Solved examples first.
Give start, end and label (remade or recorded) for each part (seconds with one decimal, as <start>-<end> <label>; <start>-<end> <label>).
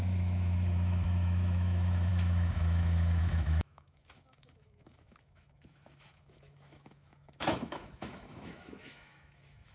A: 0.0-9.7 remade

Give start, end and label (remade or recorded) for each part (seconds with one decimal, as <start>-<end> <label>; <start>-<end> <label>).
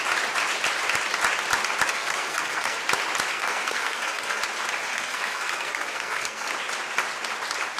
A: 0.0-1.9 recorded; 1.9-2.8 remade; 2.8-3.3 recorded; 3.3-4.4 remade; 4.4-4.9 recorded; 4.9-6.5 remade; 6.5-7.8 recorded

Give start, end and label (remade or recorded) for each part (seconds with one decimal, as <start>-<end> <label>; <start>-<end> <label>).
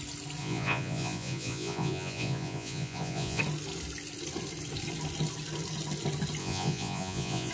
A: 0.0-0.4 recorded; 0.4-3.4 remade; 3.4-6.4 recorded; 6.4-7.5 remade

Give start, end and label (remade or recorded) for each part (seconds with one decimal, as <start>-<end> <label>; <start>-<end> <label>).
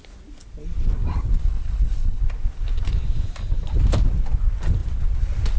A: 0.0-1.4 recorded; 1.4-2.2 remade; 2.2-5.6 recorded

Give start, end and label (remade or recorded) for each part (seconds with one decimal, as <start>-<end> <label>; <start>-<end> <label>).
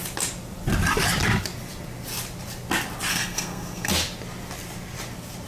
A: 0.0-3.1 recorded; 3.1-3.9 remade; 3.9-5.5 recorded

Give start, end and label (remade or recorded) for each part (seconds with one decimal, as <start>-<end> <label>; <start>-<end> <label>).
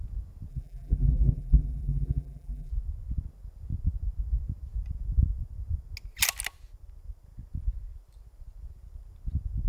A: 0.0-0.5 recorded; 0.5-2.7 remade; 2.7-9.7 recorded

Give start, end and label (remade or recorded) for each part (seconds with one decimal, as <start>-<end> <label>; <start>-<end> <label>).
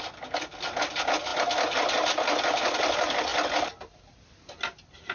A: 0.0-5.1 recorded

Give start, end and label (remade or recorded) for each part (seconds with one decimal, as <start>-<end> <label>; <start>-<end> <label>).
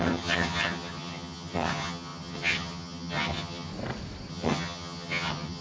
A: 0.0-3.7 remade; 3.7-4.3 recorded; 4.3-5.6 remade